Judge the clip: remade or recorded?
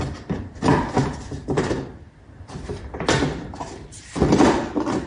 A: recorded